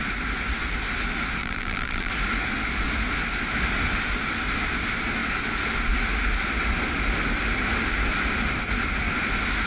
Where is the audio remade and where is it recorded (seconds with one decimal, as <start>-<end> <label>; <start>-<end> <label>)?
0.0-1.4 recorded; 1.4-2.1 remade; 2.1-9.7 recorded